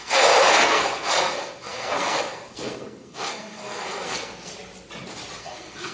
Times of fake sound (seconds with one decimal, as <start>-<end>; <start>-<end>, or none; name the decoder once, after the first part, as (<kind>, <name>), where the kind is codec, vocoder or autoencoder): 0.0-4.5 (codec, SNAC); 5.4-5.9